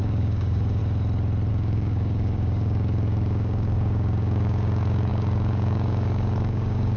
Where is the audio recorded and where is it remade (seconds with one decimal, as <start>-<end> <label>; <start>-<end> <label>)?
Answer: 0.0-0.8 remade; 0.8-1.5 recorded; 1.5-7.0 remade